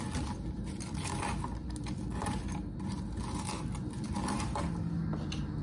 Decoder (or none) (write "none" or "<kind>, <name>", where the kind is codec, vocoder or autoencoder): none